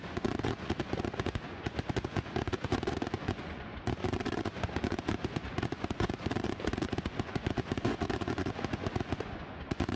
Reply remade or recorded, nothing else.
remade